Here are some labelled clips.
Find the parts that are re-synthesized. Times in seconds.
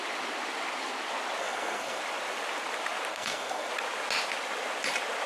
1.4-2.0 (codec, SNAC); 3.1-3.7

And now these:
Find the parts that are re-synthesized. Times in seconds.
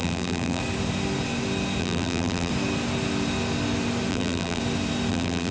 0.0-0.6 (vocoder, BigVGAN v2); 1.8-2.5; 4.1-4.6; 5.1-5.5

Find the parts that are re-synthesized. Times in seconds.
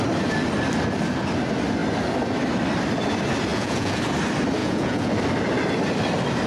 3.5-4.0 (vocoder, Vocos); 4.6-5.1